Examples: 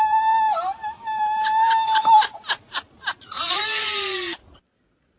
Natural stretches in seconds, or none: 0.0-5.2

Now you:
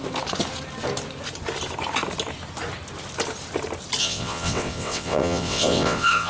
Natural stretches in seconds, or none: 0.0-4.0